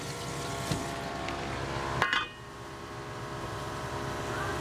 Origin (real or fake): fake